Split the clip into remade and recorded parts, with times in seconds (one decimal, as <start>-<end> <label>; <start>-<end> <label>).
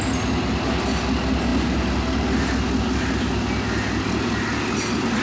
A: 0.0-5.2 recorded